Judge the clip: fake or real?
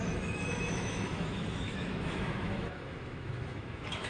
fake